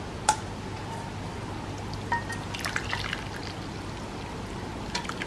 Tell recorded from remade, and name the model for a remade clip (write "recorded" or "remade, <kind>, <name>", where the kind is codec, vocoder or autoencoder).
recorded